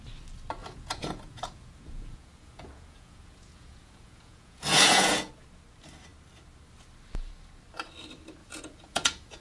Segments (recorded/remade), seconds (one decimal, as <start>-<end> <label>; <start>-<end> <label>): 0.0-0.6 recorded; 0.6-5.3 remade; 5.3-8.4 recorded; 8.4-9.4 remade